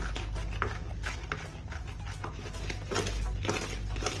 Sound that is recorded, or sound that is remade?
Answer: recorded